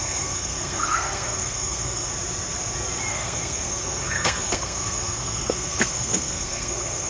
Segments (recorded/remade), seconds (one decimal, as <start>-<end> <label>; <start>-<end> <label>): 0.0-2.1 remade; 2.1-3.1 recorded; 3.1-7.1 remade